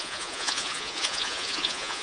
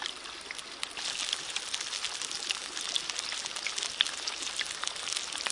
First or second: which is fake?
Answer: first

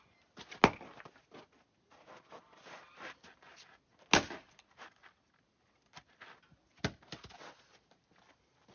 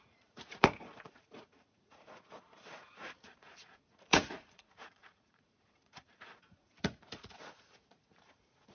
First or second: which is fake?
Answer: second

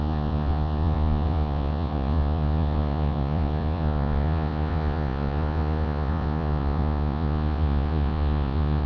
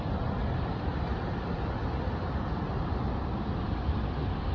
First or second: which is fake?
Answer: first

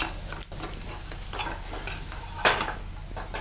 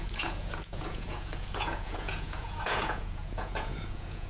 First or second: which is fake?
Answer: second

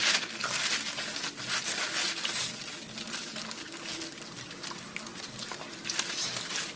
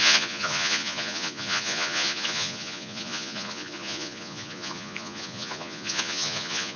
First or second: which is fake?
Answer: second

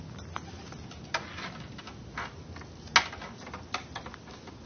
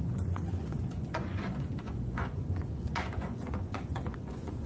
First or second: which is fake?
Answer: second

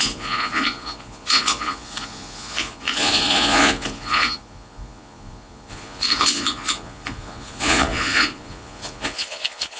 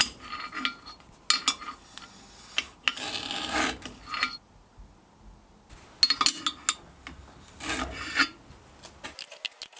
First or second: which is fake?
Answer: first